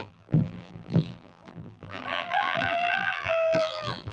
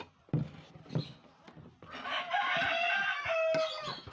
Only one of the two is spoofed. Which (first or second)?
first